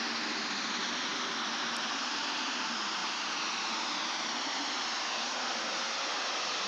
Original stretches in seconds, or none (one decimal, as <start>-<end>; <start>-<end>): 0.0-6.7